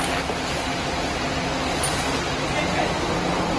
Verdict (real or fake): real